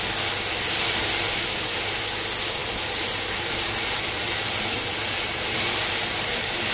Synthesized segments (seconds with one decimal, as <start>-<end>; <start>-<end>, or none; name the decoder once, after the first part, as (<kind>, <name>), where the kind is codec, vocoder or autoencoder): 2.6-6.7 (vocoder, BigVGAN v2)